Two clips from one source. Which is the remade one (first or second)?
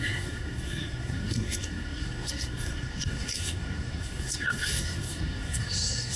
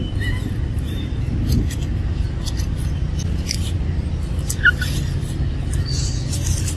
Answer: first